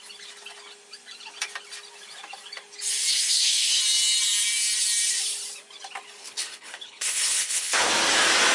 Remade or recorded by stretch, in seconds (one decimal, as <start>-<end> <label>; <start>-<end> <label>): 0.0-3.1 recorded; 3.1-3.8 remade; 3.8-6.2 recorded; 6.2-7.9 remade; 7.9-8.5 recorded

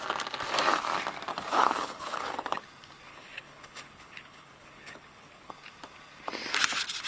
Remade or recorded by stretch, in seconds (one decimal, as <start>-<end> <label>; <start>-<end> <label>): 0.0-1.3 recorded; 1.3-2.6 remade; 2.6-3.1 recorded; 3.1-5.5 remade; 5.5-7.1 recorded

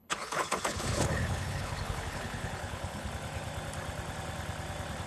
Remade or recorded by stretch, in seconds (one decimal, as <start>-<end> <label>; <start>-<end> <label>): 0.0-3.1 remade; 3.1-5.1 recorded

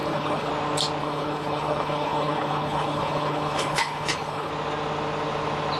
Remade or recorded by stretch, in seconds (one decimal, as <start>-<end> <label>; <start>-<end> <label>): 0.0-0.5 remade; 0.5-1.0 recorded; 1.0-4.5 remade; 4.5-5.8 recorded

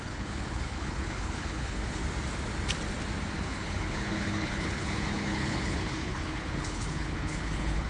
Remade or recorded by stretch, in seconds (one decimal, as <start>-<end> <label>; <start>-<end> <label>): 0.0-2.0 remade; 2.0-3.4 recorded; 3.4-7.9 remade

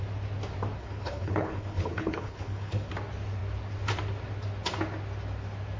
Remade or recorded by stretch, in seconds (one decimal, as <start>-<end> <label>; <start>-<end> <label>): 0.0-0.8 recorded; 0.8-2.9 remade; 2.9-5.8 recorded

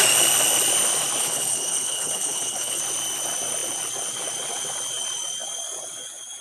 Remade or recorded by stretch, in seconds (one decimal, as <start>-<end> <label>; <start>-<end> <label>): 0.0-1.2 recorded; 1.2-2.8 remade; 2.8-6.4 recorded